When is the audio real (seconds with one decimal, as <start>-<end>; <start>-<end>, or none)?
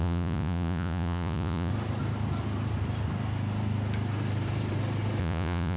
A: 1.7-5.2